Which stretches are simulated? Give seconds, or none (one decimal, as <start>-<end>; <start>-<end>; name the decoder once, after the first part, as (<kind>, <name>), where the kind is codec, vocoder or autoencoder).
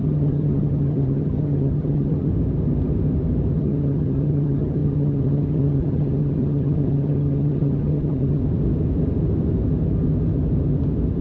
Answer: 0.0-2.3 (vocoder, HiFi-GAN); 3.6-8.4